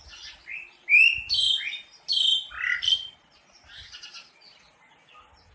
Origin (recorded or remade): recorded